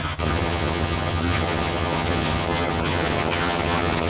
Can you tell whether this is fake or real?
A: fake